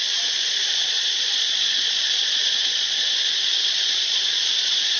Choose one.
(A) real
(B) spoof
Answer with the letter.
B